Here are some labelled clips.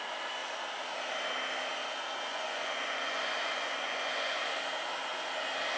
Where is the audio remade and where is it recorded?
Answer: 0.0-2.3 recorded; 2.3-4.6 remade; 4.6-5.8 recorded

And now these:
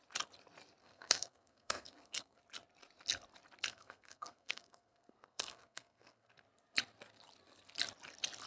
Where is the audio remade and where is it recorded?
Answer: 0.0-0.8 recorded; 0.8-2.4 remade; 2.4-3.7 recorded; 3.7-6.3 remade; 6.3-8.5 recorded

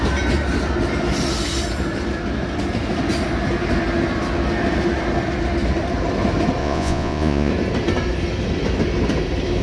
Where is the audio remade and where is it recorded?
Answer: 0.0-6.6 recorded; 6.6-7.5 remade; 7.5-9.6 recorded